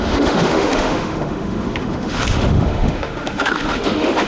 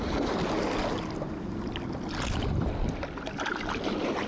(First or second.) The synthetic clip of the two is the first